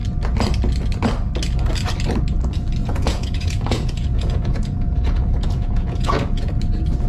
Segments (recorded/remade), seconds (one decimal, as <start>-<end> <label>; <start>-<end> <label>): 0.0-2.8 recorded; 2.8-6.5 remade; 6.5-7.1 recorded